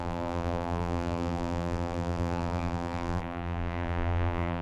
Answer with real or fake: fake